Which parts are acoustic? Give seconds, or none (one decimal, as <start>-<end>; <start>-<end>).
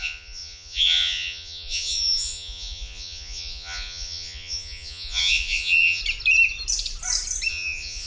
6.0-7.5